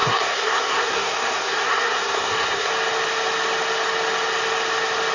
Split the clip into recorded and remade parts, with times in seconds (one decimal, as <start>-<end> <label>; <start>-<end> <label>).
0.0-2.7 remade; 2.7-5.1 recorded